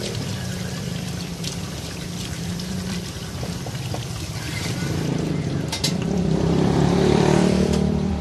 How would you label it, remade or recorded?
remade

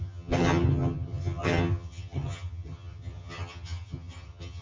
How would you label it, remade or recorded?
remade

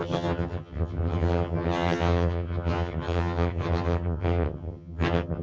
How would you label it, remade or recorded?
remade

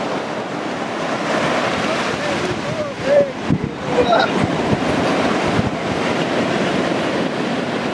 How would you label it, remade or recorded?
remade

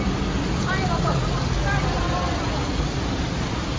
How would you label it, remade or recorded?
recorded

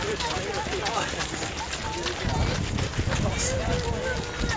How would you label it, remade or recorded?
recorded